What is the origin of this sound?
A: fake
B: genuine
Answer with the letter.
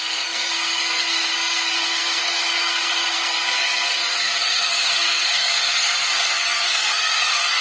A